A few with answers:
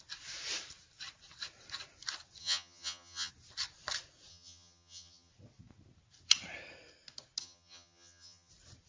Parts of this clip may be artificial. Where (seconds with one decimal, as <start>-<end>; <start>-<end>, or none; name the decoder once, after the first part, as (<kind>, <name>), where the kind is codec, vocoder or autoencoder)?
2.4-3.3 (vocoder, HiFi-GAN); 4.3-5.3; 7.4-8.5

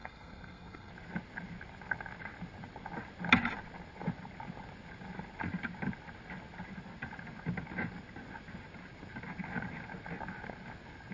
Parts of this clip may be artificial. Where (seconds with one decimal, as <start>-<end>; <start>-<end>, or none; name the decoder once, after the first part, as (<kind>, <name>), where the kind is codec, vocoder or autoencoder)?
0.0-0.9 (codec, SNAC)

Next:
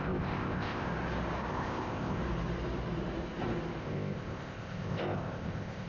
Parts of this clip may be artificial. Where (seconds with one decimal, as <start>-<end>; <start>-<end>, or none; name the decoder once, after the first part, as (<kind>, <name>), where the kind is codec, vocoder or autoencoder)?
0.0-0.9 (codec, ZipCodec); 1.5-2.2; 3.8-5.9

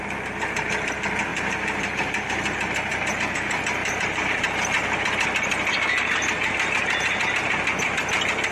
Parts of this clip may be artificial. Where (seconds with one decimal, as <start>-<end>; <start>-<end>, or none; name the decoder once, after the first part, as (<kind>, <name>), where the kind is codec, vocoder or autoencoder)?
1.3-3.2 (vocoder, BigVGAN v2); 3.8-4.4

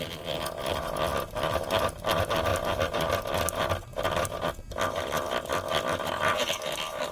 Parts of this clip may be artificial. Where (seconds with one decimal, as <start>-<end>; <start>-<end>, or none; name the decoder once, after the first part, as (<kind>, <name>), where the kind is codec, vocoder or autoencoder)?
none